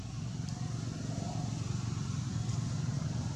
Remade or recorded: recorded